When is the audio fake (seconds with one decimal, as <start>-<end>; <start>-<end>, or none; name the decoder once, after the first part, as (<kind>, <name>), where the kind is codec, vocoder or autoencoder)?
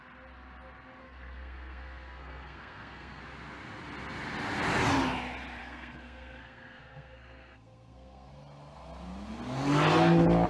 1.0-3.2 (codec, SNAC); 5.6-8.3